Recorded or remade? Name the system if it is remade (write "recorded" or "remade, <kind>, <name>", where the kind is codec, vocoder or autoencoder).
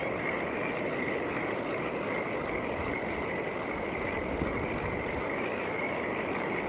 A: recorded